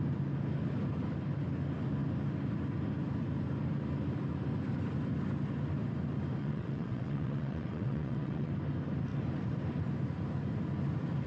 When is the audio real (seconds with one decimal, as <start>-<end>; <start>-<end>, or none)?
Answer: 0.0-6.4; 8.5-11.3